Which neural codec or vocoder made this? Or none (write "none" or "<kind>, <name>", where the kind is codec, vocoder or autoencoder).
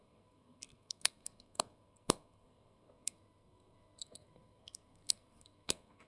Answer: codec, SNAC